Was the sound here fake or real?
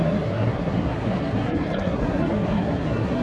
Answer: fake